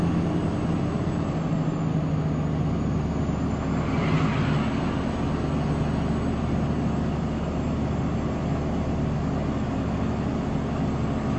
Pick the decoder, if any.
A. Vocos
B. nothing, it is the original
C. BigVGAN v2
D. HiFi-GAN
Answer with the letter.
B